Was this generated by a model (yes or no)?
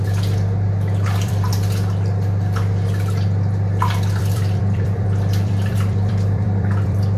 yes